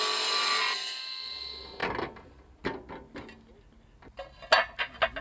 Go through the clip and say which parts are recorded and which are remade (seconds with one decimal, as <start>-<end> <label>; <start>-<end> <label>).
0.0-5.2 recorded